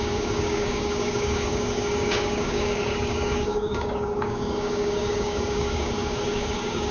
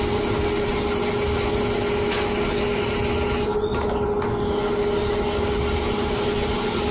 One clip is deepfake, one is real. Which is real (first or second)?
second